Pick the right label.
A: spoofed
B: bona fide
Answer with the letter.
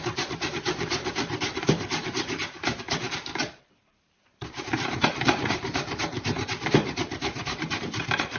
A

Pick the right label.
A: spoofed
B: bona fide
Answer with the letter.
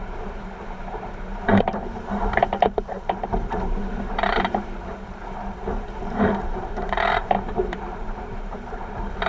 A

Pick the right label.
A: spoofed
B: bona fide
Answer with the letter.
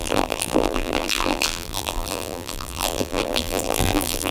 A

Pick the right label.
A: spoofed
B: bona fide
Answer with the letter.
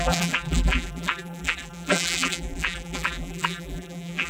A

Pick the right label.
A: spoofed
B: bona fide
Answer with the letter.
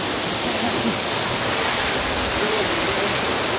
B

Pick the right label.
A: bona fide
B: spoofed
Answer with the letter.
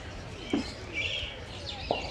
B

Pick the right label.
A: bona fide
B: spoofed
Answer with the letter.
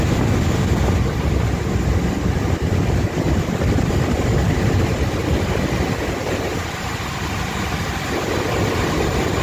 A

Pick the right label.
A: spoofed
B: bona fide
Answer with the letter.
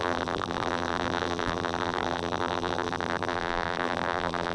A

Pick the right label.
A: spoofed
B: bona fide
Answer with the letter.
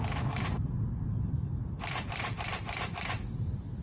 A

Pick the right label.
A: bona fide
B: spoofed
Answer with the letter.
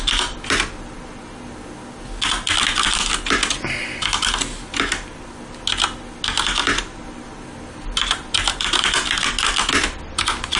A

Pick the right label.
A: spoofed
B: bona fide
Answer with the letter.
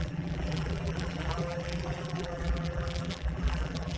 A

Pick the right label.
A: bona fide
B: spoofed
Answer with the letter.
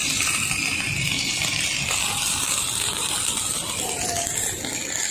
B